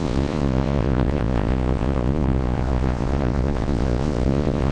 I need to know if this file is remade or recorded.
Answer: remade